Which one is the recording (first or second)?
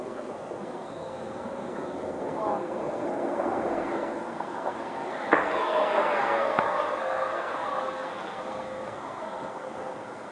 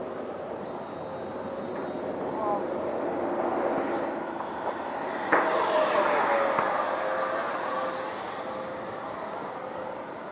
second